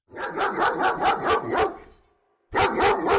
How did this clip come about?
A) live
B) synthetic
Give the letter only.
A